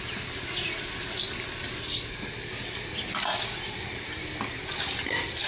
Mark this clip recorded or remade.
recorded